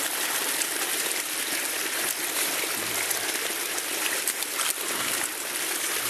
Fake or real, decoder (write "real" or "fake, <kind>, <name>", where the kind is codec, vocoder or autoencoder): real